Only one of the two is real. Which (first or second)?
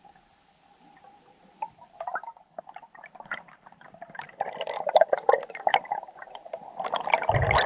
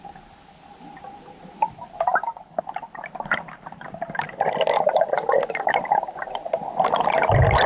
second